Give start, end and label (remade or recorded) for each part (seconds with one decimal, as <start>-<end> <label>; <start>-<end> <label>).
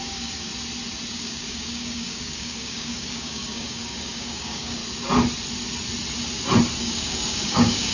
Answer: 0.0-0.5 remade; 0.5-1.1 recorded; 1.1-4.8 remade; 4.8-6.8 recorded; 6.8-7.9 remade